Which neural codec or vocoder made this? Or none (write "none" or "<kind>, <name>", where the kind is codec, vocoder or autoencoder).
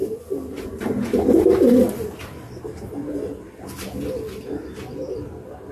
none